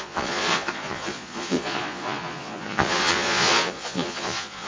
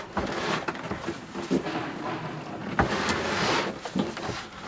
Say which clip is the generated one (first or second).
first